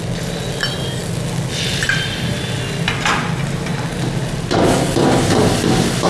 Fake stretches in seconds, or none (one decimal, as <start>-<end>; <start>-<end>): none